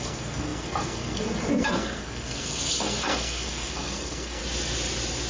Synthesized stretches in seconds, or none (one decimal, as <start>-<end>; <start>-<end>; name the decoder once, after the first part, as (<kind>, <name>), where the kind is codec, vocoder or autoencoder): 0.0-4.4 (codec, SNAC)